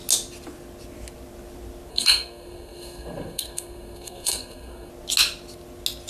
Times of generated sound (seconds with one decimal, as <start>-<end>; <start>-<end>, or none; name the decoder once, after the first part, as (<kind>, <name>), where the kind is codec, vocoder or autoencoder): 1.9-4.9 (codec, SNAC)